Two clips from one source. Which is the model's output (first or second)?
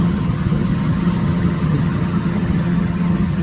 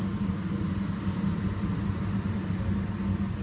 first